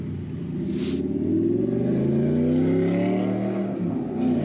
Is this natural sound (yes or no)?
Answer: yes